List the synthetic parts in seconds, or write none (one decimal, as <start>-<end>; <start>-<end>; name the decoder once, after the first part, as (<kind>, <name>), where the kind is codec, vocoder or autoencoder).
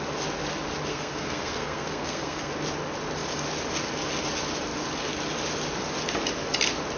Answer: 0.9-2.5 (codec, SNAC)